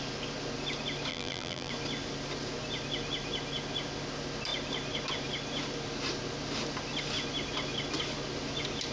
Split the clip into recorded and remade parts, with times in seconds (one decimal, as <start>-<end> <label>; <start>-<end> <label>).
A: 0.0-1.1 recorded; 1.1-1.7 remade; 1.7-8.9 recorded